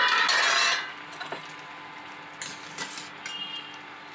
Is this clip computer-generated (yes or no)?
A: no